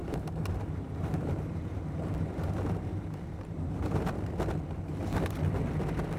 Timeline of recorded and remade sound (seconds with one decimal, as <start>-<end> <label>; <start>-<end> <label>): 0.0-3.7 remade; 3.7-6.2 recorded